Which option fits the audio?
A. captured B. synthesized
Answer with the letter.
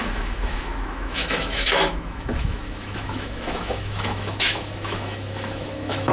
B